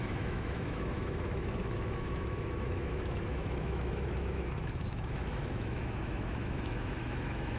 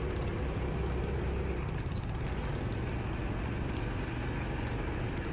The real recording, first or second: second